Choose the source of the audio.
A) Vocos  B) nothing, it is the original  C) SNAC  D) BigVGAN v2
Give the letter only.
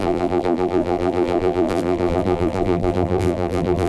D